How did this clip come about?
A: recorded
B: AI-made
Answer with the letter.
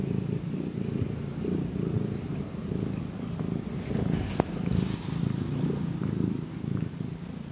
A